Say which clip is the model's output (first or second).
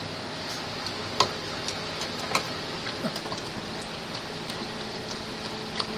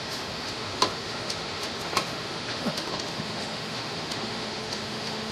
second